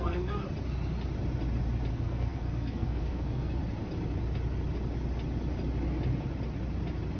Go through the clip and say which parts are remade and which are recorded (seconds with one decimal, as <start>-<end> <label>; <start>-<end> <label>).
0.0-0.4 remade; 0.4-1.9 recorded; 1.9-3.6 remade; 3.6-7.2 recorded